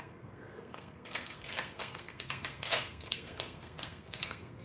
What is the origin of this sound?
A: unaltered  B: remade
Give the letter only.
B